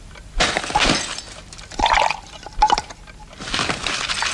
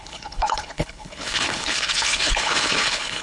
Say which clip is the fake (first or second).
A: second